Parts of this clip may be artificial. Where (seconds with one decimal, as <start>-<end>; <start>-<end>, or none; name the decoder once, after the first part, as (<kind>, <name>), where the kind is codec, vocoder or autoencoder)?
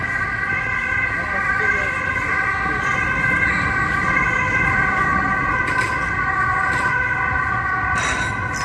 none